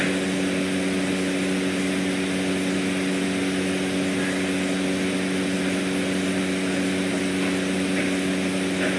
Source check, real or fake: real